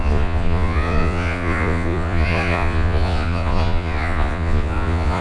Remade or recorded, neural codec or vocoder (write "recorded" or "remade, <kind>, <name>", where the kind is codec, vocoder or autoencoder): remade, vocoder, Vocos